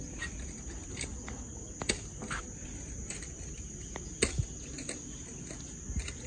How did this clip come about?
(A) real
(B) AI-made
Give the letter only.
A